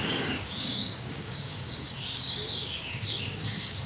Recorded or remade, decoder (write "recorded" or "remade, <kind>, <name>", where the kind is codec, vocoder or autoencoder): remade, codec, DAC